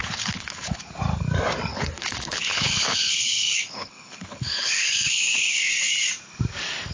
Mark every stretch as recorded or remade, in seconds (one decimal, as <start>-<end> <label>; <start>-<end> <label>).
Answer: 0.0-0.8 remade; 0.8-1.7 recorded; 1.7-5.7 remade; 5.7-6.9 recorded